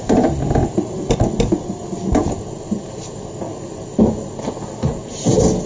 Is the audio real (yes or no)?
yes